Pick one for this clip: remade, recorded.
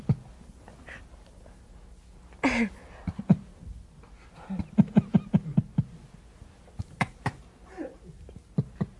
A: recorded